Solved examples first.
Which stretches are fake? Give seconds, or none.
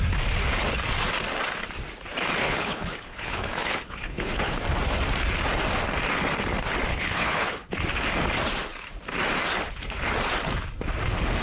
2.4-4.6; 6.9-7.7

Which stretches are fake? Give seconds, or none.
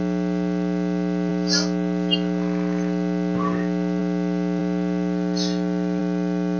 none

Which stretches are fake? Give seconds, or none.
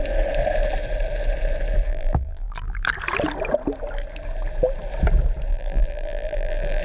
1.9-2.9; 5.5-6.8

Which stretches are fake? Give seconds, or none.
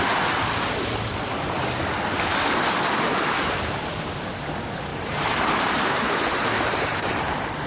4.9-7.3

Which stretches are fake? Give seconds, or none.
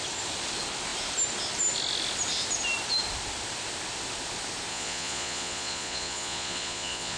4.7-7.2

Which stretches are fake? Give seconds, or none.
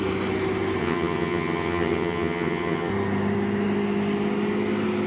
0.8-2.9